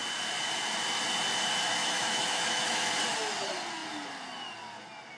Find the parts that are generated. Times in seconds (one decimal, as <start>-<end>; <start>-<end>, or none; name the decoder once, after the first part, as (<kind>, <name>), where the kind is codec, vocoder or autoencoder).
1.8-2.9 (autoencoder, DAC-VAE)